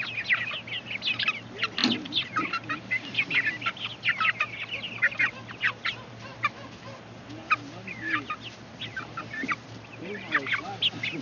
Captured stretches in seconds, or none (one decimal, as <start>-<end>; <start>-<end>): 0.0-1.8; 4.1-11.2